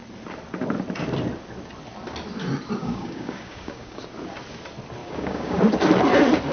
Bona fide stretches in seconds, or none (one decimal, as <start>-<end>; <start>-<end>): 0.0-2.8; 4.0-5.0; 5.6-6.5